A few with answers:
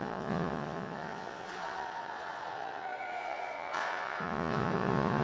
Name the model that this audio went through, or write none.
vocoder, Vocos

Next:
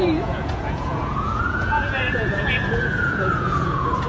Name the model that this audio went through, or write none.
vocoder, Vocos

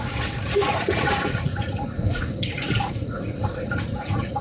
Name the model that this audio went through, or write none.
vocoder, Vocos